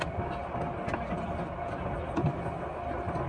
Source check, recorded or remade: recorded